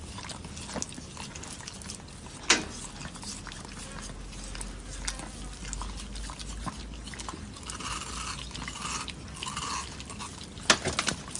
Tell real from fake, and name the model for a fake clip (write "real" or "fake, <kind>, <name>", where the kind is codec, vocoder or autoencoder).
real